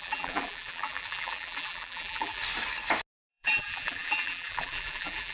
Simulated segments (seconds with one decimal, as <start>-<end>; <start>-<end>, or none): 0.0-2.4; 3.3-5.3